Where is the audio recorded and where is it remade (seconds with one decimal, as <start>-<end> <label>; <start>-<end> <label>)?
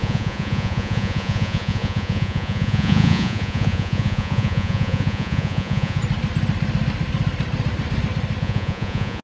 0.0-6.0 remade; 6.0-8.4 recorded; 8.4-9.2 remade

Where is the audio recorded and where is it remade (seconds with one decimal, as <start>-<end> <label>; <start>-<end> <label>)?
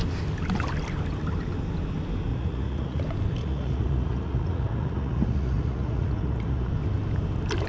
0.0-2.3 recorded; 2.3-3.0 remade; 3.0-3.4 recorded; 3.4-6.7 remade; 6.7-7.7 recorded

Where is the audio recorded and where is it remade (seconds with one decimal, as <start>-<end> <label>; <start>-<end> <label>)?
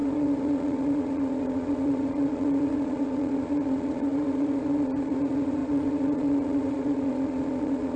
0.0-8.0 remade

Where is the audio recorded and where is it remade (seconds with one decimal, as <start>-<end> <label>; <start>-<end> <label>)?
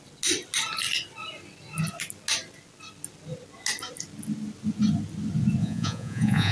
0.0-5.6 recorded; 5.6-6.5 remade